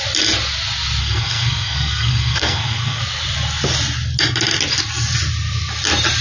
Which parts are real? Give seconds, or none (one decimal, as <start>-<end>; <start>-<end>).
0.0-1.0; 3.0-6.2